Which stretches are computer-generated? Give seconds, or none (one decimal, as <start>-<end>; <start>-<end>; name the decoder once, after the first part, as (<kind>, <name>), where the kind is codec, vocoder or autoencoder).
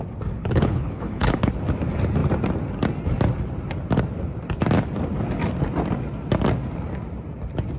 0.4-1.5 (codec, HILCodec)